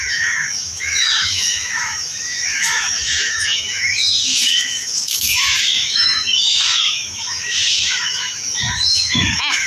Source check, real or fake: fake